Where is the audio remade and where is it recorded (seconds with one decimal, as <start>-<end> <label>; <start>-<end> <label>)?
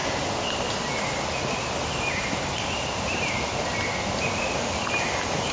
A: 0.0-5.5 recorded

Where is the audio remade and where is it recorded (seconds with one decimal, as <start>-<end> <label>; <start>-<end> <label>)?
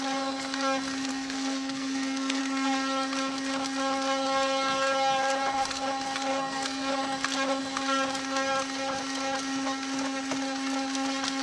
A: 0.0-1.1 recorded; 1.1-2.4 remade; 2.4-6.3 recorded; 6.3-6.9 remade; 6.9-11.4 recorded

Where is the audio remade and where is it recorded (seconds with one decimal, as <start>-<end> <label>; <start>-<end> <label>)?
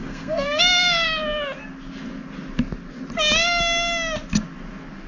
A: 0.0-0.6 remade; 0.6-5.1 recorded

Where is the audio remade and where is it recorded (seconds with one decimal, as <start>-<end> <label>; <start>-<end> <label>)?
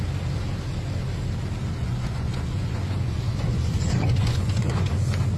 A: 0.0-1.8 recorded; 1.8-5.0 remade; 5.0-5.4 recorded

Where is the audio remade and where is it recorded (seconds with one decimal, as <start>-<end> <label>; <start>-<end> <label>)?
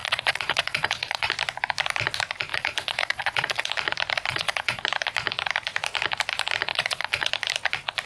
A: 0.0-1.3 remade; 1.3-2.5 recorded; 2.5-3.7 remade; 3.7-4.3 recorded; 4.3-4.8 remade; 4.8-6.7 recorded; 6.7-7.3 remade; 7.3-8.1 recorded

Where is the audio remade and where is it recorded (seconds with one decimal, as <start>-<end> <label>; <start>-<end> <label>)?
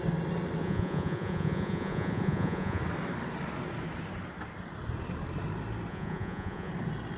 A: 0.0-0.6 recorded; 0.6-2.8 remade; 2.8-5.9 recorded; 5.9-6.7 remade; 6.7-7.2 recorded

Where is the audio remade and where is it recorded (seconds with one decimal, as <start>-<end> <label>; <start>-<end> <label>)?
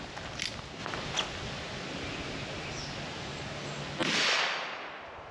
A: 0.0-5.3 recorded